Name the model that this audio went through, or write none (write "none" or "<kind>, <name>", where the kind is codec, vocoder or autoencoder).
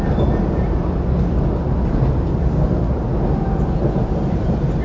none